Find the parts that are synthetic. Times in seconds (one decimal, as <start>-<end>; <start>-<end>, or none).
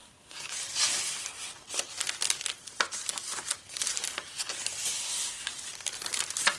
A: 0.0-0.5; 5.0-5.5